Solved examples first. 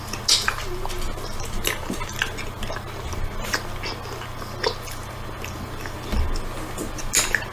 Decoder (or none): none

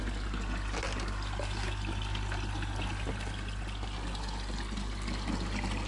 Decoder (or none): none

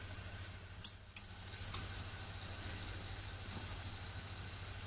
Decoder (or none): none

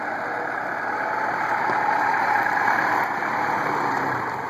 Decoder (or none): none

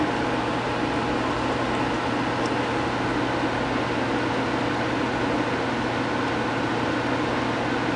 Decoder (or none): none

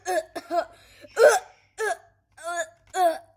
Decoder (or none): none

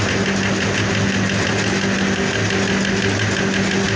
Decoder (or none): none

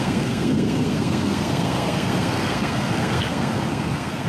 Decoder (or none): codec, SNAC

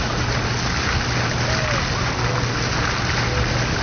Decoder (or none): none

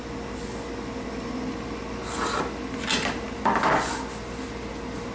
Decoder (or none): none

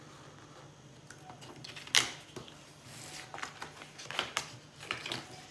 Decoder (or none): none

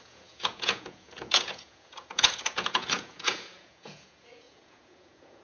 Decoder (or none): vocoder, Vocos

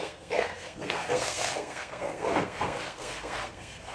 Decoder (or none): codec, SNAC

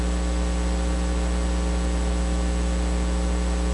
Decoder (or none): none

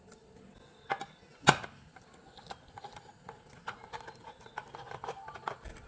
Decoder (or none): none